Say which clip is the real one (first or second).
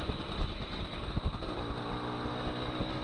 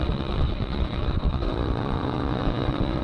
first